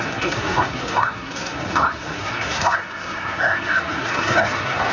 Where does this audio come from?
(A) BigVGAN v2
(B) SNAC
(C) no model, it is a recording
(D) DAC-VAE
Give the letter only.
B